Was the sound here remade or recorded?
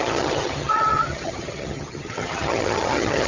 remade